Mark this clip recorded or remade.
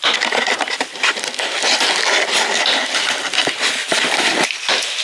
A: recorded